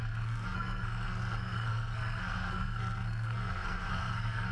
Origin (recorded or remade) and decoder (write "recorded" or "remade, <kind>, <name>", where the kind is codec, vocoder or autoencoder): remade, codec, SNAC